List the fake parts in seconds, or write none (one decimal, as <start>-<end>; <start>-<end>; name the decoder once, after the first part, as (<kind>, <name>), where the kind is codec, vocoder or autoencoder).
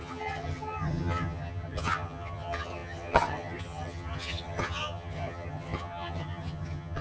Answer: 0.0-7.0 (vocoder, HiFi-GAN)